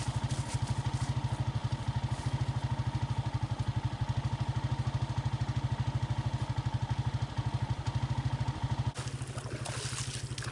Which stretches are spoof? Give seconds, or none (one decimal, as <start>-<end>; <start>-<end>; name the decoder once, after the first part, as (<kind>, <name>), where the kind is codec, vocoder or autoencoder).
none